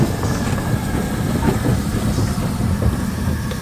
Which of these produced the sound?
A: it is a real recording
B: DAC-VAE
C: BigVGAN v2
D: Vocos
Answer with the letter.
A